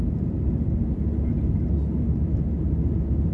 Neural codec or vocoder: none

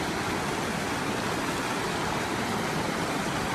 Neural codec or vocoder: none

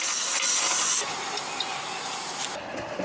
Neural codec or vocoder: none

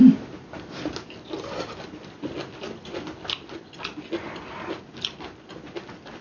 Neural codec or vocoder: none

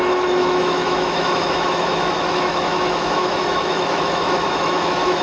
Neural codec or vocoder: autoencoder, DAC-VAE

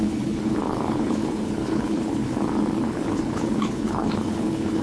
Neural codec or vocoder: codec, HILCodec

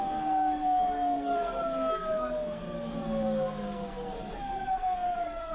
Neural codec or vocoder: codec, SNAC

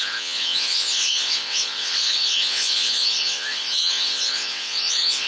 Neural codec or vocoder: vocoder, WaveNeXt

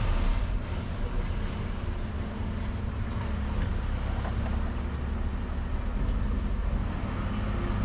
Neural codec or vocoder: none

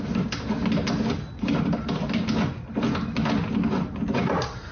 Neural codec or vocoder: none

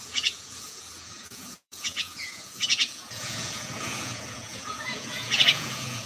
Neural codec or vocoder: vocoder, Vocos